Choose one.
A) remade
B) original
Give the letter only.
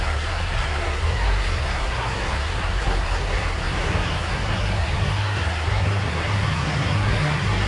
A